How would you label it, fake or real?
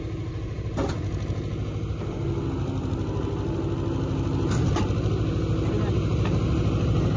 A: real